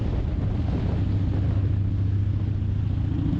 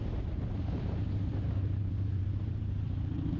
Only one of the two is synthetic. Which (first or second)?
second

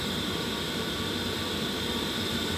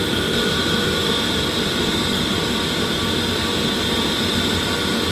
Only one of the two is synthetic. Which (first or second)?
first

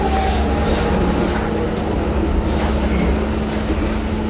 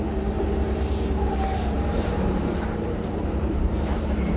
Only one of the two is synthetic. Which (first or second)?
second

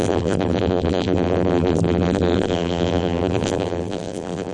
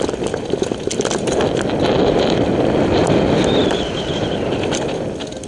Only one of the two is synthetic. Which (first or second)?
first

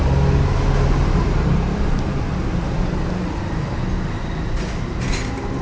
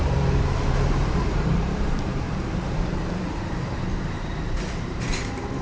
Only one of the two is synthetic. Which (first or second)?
second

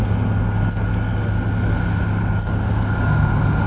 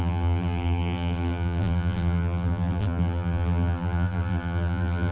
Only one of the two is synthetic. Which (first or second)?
second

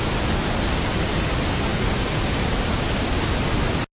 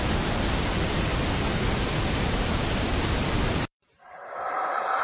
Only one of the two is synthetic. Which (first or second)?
second